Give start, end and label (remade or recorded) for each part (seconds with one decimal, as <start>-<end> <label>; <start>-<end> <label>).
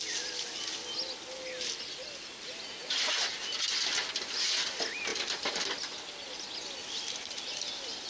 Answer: 0.0-8.1 recorded